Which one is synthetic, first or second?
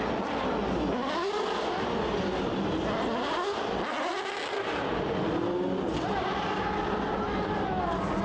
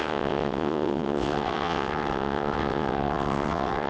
second